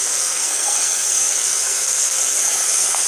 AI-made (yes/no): yes